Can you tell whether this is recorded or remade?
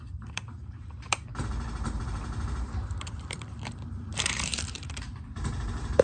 remade